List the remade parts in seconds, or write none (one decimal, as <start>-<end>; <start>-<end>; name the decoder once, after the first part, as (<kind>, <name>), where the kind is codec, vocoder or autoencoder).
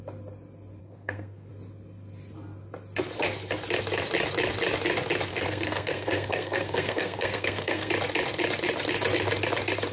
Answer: 0.8-1.5 (codec, SNAC); 5.3-7.9